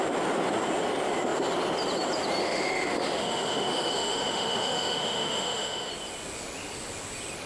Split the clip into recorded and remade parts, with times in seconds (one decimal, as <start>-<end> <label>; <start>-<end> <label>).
0.0-2.4 recorded; 2.4-5.9 remade; 5.9-7.5 recorded